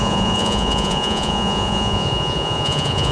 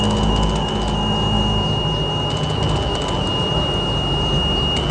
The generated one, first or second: first